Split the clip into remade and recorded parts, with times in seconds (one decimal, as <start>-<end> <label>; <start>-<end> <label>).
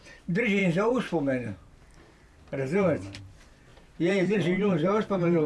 0.0-0.6 recorded; 0.6-3.2 remade; 3.2-3.7 recorded; 3.7-5.5 remade